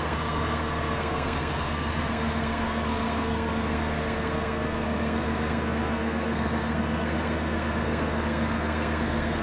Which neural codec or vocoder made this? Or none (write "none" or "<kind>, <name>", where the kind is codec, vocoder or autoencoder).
codec, SNAC